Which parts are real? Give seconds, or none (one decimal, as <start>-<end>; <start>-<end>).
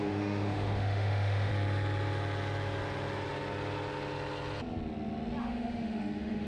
1.5-5.4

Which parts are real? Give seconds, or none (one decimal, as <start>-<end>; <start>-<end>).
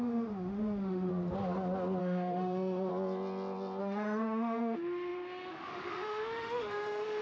1.1-2.0; 2.9-3.8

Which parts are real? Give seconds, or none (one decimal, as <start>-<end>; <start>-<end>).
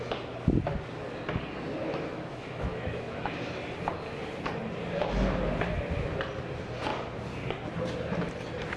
0.0-1.8; 3.3-8.8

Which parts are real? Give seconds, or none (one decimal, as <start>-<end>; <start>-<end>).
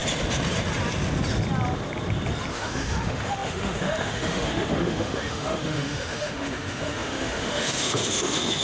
0.0-2.5